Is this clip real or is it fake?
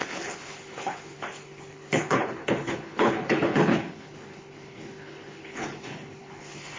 fake